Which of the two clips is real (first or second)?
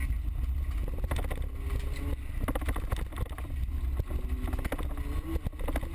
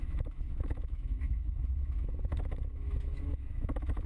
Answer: first